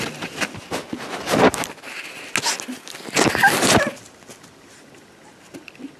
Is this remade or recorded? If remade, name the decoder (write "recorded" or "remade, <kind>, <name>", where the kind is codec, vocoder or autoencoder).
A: recorded